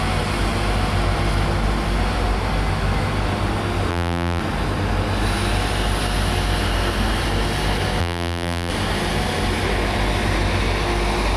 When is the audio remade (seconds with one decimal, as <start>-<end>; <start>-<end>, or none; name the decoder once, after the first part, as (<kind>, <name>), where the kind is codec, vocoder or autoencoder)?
3.9-4.4 (vocoder, BigVGAN v2); 8.0-8.7